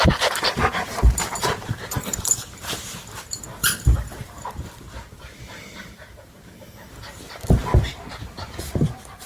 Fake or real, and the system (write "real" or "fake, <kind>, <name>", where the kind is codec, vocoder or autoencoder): fake, vocoder, BigVGAN v2